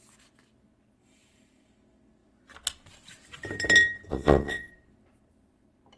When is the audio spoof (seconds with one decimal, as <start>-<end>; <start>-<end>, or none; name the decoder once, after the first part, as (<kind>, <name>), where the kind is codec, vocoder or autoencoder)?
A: 4.1-4.7 (vocoder, WaveNeXt)